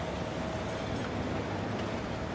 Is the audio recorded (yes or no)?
yes